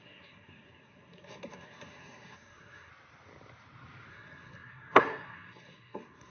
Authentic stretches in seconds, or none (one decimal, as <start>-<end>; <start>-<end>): 2.9-4.1